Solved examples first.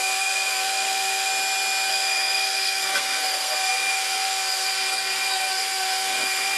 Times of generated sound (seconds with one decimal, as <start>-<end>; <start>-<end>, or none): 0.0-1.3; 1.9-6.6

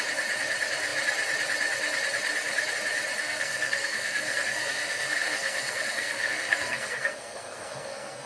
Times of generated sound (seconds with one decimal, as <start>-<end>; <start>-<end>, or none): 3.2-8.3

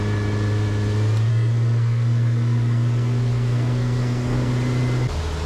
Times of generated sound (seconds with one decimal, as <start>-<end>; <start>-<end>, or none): 1.3-4.5

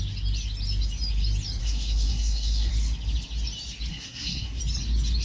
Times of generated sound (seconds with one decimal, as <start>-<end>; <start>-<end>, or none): 1.6-2.7; 3.9-4.6